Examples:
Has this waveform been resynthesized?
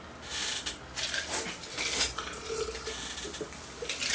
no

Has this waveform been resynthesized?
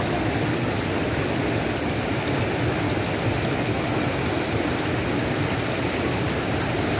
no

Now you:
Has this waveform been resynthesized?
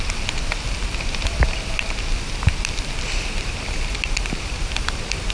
no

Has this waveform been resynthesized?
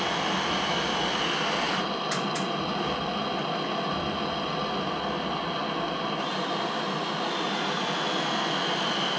no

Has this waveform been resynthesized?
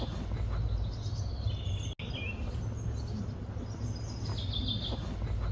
no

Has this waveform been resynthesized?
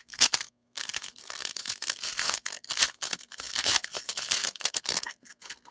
yes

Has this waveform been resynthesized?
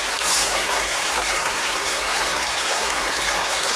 yes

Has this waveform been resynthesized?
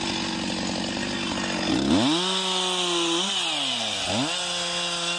no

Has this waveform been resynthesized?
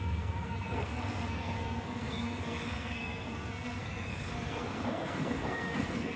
yes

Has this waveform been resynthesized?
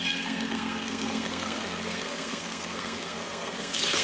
yes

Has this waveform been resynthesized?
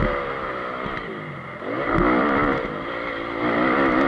no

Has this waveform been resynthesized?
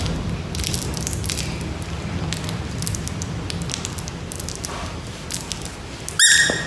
no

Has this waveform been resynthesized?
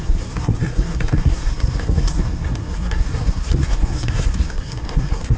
yes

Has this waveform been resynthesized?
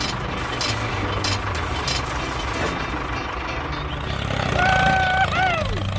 no